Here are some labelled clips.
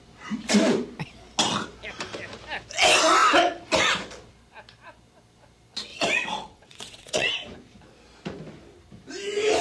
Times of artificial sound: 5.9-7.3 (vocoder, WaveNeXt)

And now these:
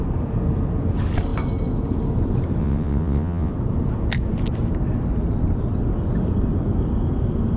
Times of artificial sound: 2.6-3.5 (vocoder, WaveNeXt)

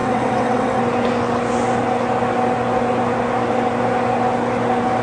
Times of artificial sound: 0.0-0.8 (vocoder, WaveNeXt)

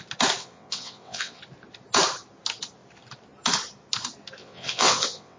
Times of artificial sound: 0.4-1.4 (vocoder, WaveNeXt); 4.4-5.4